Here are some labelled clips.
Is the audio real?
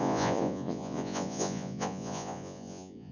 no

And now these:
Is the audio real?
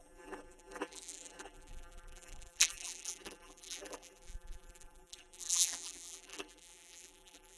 no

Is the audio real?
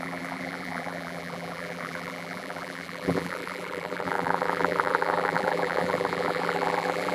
no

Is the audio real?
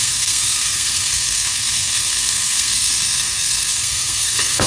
no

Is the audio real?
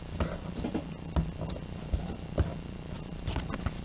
yes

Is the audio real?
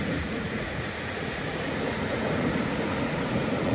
no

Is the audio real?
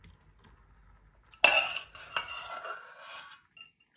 yes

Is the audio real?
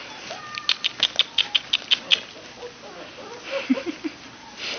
yes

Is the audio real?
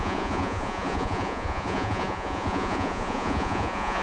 no